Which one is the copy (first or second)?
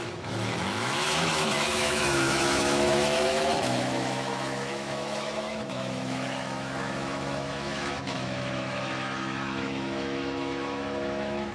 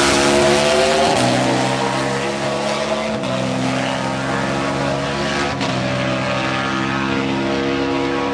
first